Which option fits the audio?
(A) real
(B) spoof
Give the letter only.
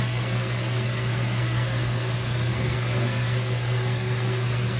B